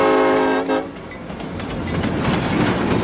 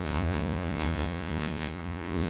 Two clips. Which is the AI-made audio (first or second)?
second